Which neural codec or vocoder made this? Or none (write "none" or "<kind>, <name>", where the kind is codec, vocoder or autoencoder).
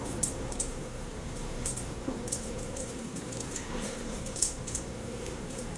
codec, SNAC